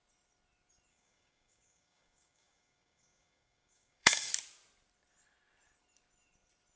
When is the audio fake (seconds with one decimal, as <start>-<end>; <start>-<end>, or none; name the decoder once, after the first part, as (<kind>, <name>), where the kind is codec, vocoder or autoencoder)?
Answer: 0.9-4.3 (codec, DAC)